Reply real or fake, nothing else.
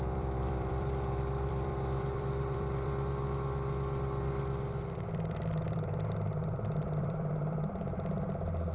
fake